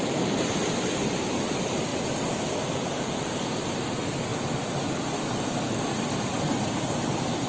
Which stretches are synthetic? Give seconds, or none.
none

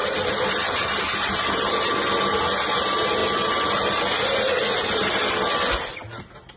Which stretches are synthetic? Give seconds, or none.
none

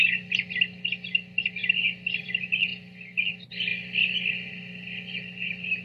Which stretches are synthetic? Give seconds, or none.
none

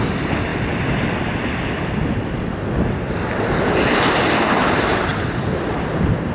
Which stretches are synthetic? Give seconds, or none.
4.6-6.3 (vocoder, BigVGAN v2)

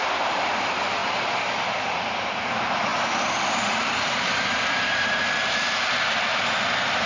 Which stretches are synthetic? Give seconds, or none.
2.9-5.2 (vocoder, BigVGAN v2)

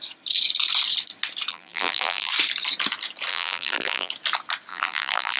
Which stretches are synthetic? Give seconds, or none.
1.5-2.3 (vocoder, BigVGAN v2); 3.3-4.1; 4.7-5.4